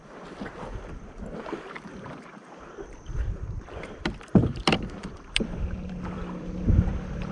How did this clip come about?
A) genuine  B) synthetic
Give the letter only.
B